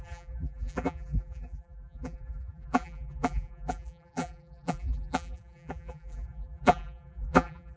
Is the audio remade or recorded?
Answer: remade